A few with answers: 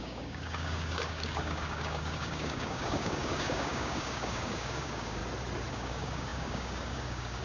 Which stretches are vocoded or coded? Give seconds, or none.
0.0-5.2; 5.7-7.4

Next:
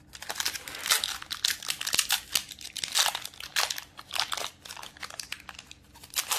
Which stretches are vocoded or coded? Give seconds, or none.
3.5-4.1

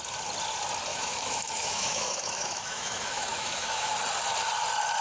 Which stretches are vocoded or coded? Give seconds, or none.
0.9-3.9

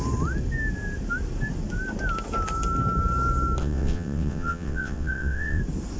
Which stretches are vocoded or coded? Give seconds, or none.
3.6-5.6

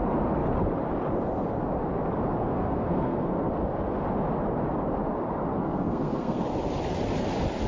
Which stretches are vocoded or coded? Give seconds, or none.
2.4-3.5; 5.5-6.4

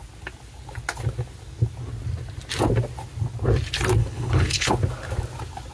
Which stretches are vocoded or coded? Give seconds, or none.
4.0-4.7

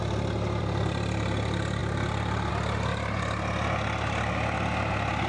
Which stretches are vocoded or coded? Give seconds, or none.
none